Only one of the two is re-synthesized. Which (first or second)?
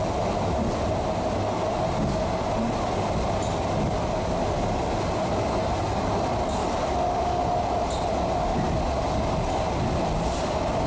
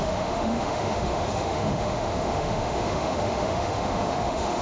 second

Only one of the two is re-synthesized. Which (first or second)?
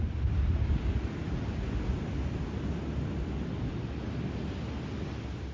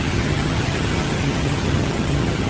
second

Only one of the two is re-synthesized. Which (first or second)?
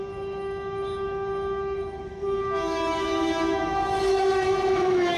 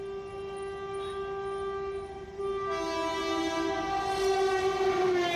first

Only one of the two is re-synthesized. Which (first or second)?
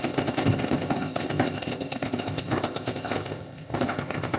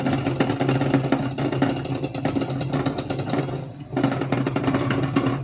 first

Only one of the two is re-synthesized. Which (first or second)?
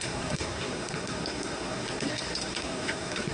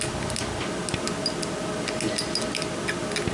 first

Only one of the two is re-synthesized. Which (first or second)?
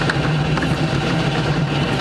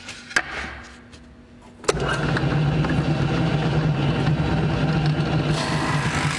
first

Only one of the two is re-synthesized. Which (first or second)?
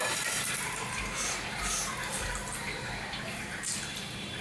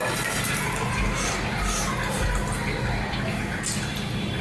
first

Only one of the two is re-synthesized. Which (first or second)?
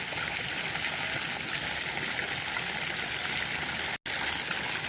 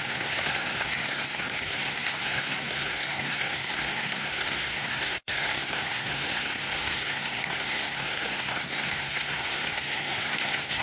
second